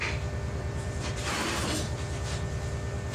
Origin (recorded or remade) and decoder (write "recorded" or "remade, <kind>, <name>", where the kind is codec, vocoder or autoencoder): remade, vocoder, BigVGAN v2